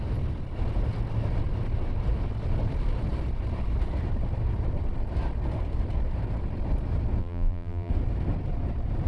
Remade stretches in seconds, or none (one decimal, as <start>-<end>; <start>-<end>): 7.2-7.9